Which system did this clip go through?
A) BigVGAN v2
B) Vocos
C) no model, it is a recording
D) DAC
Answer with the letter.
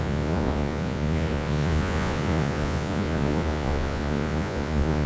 B